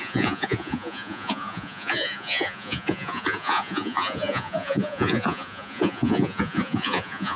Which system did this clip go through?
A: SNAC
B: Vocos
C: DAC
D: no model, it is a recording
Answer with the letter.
B